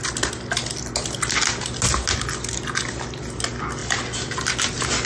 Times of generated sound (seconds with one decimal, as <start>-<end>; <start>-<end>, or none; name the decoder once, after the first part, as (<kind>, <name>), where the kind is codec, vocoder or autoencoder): none